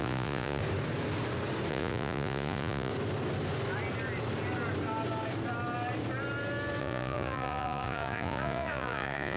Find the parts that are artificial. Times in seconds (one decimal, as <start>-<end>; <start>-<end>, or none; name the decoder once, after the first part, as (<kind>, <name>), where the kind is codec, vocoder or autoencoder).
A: 0.0-0.6 (vocoder, Vocos); 1.7-2.9; 6.8-9.4